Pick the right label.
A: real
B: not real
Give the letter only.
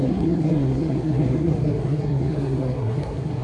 B